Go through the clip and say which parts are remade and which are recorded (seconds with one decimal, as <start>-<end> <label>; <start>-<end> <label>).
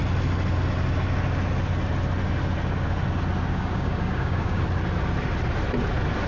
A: 0.0-3.5 recorded; 3.5-4.6 remade; 4.6-6.3 recorded